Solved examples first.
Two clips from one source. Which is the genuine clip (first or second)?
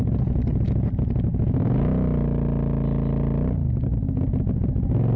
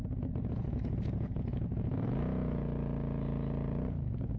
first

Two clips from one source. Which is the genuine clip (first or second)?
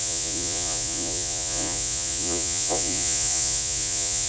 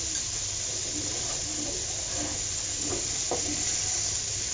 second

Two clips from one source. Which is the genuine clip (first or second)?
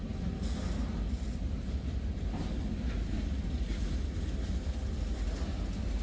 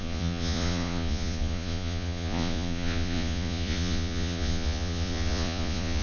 first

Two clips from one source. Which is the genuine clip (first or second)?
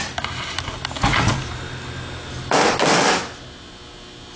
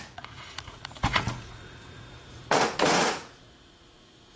first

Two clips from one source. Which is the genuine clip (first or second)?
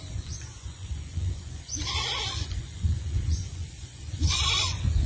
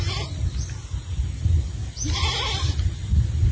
second